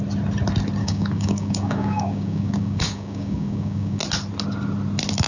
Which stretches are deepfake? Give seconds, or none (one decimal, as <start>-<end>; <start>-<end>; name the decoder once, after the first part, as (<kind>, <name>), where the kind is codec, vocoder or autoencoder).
0.8-4.0 (codec, DAC)